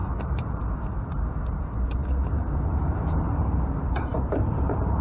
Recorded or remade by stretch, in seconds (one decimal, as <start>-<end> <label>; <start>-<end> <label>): 0.0-5.0 remade

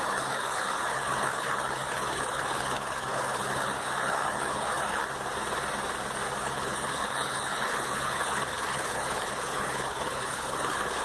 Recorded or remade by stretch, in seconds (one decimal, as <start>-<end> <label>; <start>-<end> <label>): 0.0-5.0 remade; 5.0-6.4 recorded; 6.4-11.0 remade

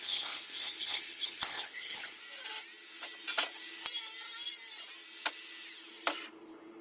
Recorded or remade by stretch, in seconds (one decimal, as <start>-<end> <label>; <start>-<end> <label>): 0.0-2.2 remade; 2.2-6.3 recorded; 6.3-6.8 remade

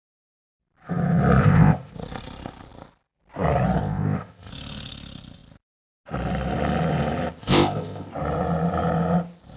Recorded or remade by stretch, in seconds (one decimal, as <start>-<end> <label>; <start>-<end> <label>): 0.0-1.4 recorded; 1.4-1.9 remade; 1.9-3.8 recorded; 3.8-4.5 remade; 4.5-7.4 recorded; 7.4-8.1 remade; 8.1-9.6 recorded

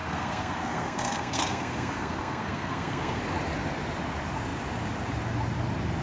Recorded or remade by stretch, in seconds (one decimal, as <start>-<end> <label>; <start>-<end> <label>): 0.0-3.2 remade; 3.2-6.0 recorded

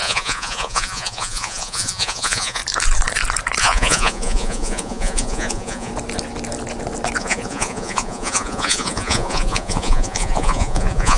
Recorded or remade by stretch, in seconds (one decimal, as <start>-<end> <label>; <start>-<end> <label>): 0.0-2.6 remade; 2.6-3.6 recorded; 3.6-5.9 remade; 5.9-7.2 recorded; 7.2-11.2 remade